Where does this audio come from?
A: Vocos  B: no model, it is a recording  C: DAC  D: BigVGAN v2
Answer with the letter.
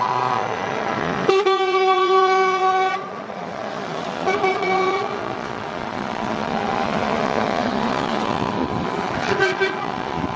A